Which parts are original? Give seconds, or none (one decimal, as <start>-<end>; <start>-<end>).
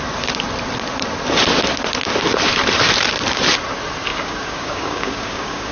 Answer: 0.0-4.1